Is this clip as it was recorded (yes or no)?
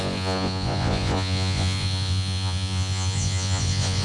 no